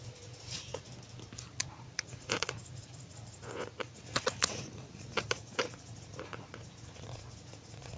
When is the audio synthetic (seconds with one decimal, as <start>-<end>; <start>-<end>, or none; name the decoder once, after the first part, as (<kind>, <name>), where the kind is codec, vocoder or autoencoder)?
0.0-0.9 (vocoder, Vocos); 1.5-8.0